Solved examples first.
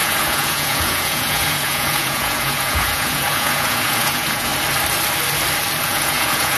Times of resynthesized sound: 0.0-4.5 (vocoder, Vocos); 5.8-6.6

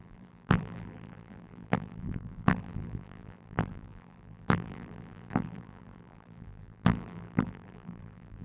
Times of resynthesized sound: 0.0-8.4 (vocoder, BigVGAN v2)

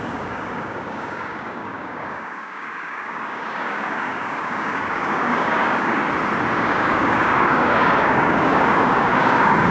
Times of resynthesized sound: 0.0-6.0 (codec, DAC); 6.5-9.7

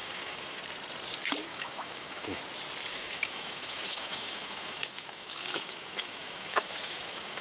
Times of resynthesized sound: 0.0-0.6 (autoencoder, DAC-VAE); 1.5-2.4; 2.9-7.4

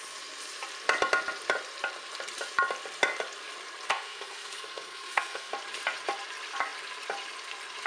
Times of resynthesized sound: 3.9-5.5 (codec, SNAC)